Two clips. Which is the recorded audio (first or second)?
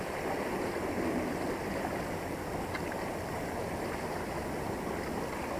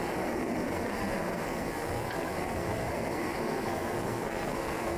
first